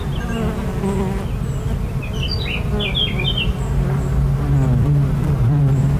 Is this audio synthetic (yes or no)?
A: no